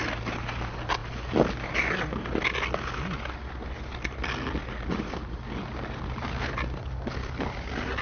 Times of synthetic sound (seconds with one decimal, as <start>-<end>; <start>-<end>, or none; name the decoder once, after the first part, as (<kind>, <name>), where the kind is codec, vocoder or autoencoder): none